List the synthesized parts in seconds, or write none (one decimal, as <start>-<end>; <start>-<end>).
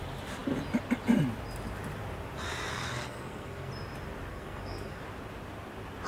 2.7-3.7; 4.3-5.0